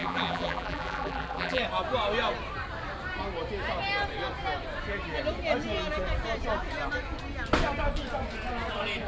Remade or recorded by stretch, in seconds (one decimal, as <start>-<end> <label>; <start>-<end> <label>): 0.0-1.6 remade; 1.6-9.1 recorded